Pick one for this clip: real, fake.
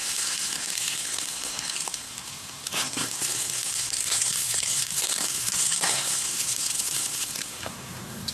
fake